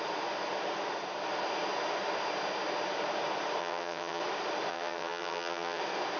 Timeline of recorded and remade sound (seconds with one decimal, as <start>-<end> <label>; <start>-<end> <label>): 0.0-3.6 recorded; 3.6-4.2 remade; 4.2-4.7 recorded; 4.7-5.8 remade; 5.8-6.2 recorded